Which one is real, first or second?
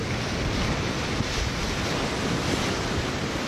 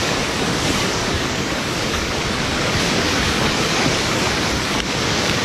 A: first